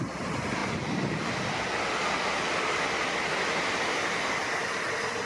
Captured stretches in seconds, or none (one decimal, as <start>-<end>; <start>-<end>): 0.0-5.3